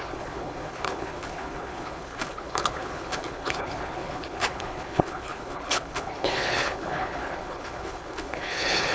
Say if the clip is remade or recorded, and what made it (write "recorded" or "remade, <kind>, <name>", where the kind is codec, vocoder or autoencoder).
remade, codec, HILCodec